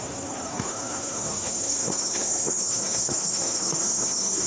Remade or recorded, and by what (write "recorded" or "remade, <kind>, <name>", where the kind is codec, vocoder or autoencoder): remade, codec, SNAC